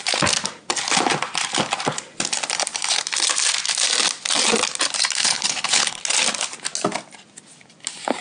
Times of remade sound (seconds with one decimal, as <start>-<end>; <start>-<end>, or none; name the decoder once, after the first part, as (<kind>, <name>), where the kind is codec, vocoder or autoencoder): 5.2-6.0 (codec, HILCodec)